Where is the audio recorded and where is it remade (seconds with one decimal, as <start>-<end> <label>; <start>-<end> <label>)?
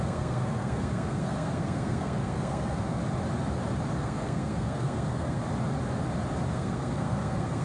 0.0-3.0 remade; 3.0-4.0 recorded; 4.0-5.4 remade; 5.4-6.5 recorded; 6.5-7.6 remade